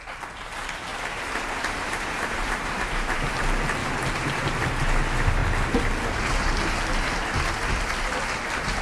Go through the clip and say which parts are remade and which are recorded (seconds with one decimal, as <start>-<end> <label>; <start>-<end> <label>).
0.0-0.9 recorded; 0.9-3.3 remade; 3.3-3.8 recorded; 3.8-4.7 remade; 4.7-8.8 recorded